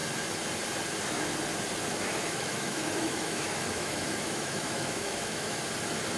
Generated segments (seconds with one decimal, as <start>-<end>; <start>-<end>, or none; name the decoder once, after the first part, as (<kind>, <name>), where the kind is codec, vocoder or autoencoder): 1.9-5.6 (autoencoder, DAC-VAE)